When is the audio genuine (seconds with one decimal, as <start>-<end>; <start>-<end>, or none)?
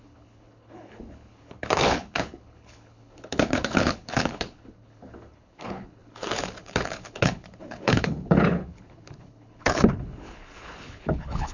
none